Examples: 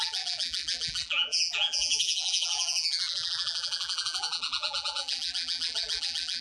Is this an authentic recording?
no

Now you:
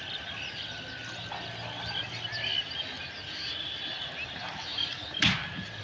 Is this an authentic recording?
yes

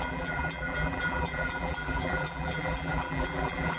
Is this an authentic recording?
no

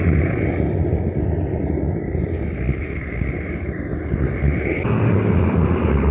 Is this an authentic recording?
yes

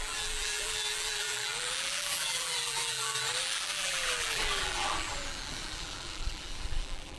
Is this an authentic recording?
no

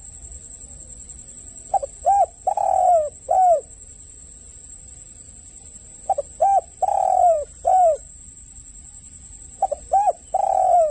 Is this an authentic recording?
no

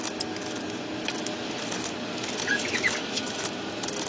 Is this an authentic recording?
yes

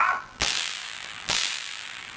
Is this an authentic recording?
no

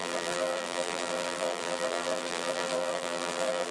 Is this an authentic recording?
no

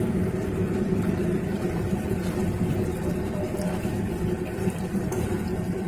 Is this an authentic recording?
no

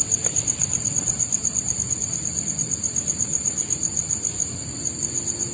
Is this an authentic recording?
no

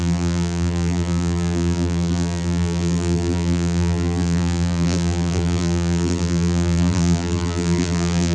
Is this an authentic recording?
no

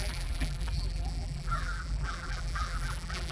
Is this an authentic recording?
no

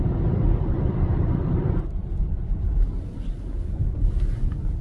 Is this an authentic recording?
no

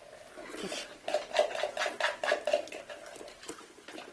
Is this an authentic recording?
yes